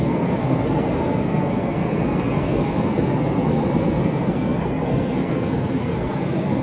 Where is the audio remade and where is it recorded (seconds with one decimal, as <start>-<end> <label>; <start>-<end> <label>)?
0.0-6.6 remade